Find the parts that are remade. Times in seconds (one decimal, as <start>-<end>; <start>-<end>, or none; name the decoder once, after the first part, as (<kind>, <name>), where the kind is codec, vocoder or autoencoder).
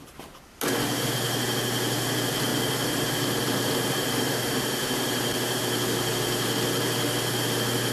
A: 2.5-5.6 (vocoder, BigVGAN v2)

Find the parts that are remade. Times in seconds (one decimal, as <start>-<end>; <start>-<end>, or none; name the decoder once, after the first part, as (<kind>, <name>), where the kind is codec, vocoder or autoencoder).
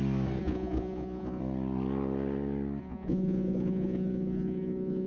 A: 0.4-1.4 (vocoder, Vocos); 2.8-5.1